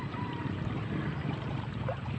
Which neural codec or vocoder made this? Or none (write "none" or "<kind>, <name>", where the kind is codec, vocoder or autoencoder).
vocoder, BigVGAN v2